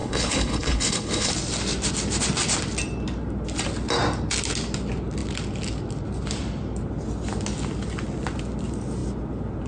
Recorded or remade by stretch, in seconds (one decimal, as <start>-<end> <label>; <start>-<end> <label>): 0.0-1.3 remade; 1.3-9.7 recorded